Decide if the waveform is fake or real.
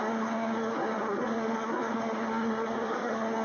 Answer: fake